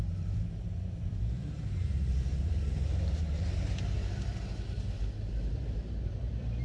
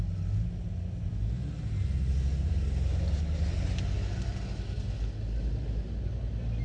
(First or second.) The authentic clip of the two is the second